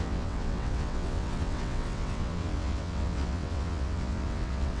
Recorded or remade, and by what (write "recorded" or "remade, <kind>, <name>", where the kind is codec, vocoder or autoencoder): remade, vocoder, WaveNeXt